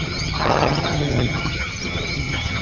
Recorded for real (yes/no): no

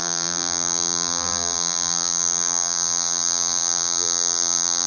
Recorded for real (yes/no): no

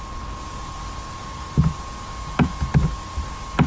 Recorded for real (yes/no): yes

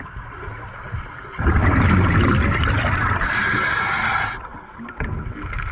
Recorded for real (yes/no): yes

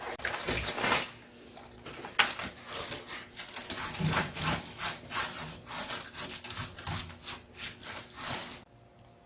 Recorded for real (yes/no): yes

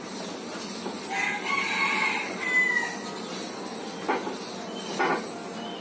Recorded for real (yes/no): yes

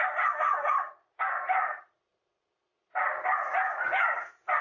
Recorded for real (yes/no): yes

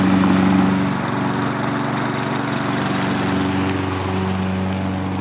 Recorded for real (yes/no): yes